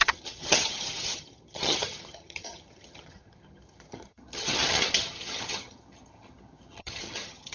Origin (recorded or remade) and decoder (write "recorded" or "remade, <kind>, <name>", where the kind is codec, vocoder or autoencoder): remade, vocoder, HiFi-GAN